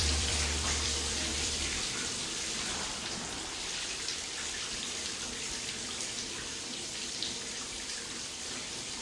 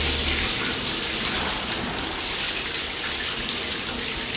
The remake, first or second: first